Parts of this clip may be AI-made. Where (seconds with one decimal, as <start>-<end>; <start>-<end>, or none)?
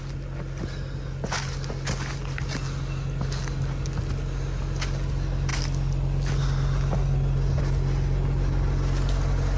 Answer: none